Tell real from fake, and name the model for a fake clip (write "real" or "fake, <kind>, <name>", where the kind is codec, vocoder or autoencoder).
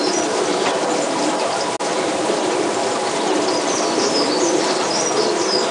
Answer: real